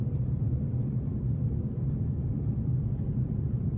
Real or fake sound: fake